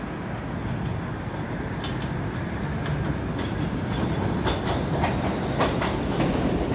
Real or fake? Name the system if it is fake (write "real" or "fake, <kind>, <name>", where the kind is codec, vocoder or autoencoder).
real